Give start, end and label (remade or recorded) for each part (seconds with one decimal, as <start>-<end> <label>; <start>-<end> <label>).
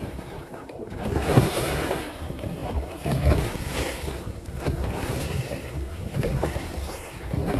0.0-7.6 remade